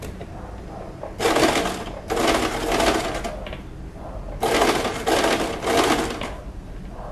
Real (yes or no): yes